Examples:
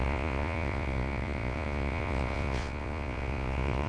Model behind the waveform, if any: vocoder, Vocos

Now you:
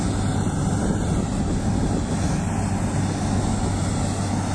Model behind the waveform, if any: none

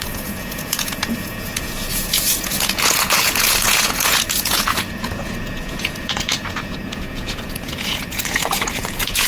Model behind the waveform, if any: vocoder, Vocos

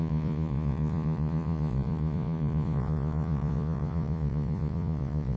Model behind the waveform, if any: vocoder, Vocos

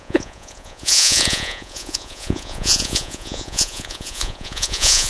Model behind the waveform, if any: vocoder, Vocos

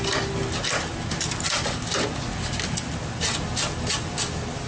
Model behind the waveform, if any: none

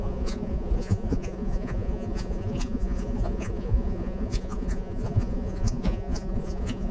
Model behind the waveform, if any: vocoder, Vocos